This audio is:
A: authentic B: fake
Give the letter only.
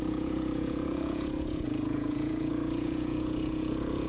B